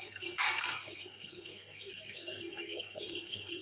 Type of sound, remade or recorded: remade